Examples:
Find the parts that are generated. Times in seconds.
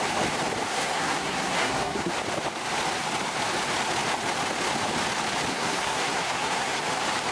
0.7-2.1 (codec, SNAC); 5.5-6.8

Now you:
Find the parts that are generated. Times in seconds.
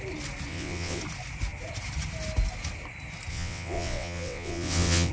0.5-1.0 (vocoder, WaveNeXt); 3.3-5.1